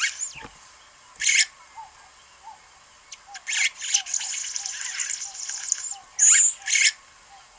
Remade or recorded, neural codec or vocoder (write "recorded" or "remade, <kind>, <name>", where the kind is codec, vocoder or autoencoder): recorded